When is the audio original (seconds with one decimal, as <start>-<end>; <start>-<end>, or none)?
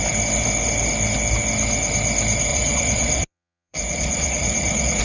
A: 0.0-2.5